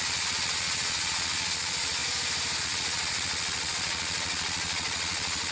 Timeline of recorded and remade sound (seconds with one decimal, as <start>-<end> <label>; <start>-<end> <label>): 0.0-2.0 remade; 2.0-2.6 recorded; 2.6-5.5 remade